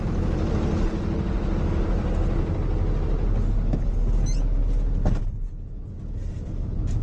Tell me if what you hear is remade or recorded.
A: recorded